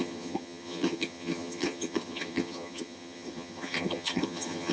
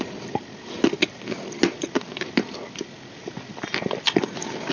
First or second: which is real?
second